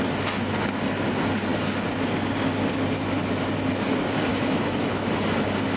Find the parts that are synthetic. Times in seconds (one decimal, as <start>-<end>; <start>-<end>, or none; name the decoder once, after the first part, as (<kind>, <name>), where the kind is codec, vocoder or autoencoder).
4.3-5.1 (autoencoder, DAC-VAE)